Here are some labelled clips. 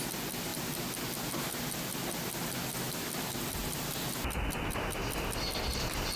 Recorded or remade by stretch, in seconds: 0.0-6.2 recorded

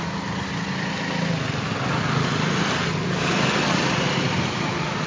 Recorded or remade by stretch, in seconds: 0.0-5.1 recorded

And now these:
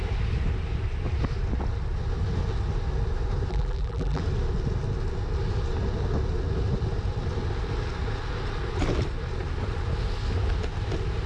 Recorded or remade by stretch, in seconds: 0.0-3.5 recorded; 3.5-4.2 remade; 4.2-11.3 recorded

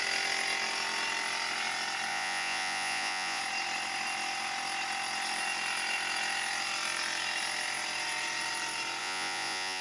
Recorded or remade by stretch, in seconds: 0.0-2.1 recorded; 2.1-3.4 remade; 3.4-9.0 recorded; 9.0-9.8 remade

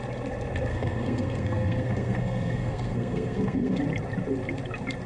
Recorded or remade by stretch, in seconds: 0.0-0.7 recorded; 0.7-3.8 remade; 3.8-5.1 recorded

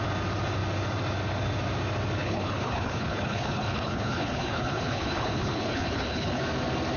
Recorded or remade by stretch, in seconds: 0.0-2.2 recorded; 2.2-6.4 remade; 6.4-7.0 recorded

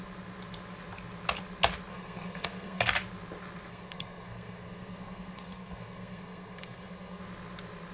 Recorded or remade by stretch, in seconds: 0.0-1.9 recorded; 1.9-2.8 remade; 2.8-3.7 recorded; 3.7-7.2 remade; 7.2-7.9 recorded

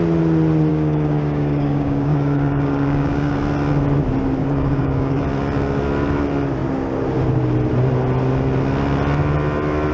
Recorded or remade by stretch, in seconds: 0.0-0.7 recorded; 0.7-3.3 remade; 3.3-4.4 recorded; 4.4-5.2 remade; 5.2-9.9 recorded